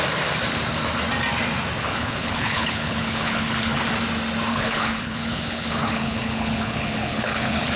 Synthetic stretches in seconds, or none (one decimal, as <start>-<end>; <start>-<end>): 1.9-3.8; 4.5-7.8